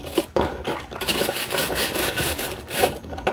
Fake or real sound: fake